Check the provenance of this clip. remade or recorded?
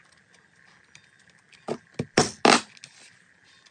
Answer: recorded